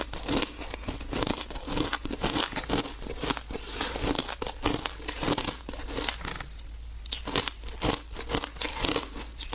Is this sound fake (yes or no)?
no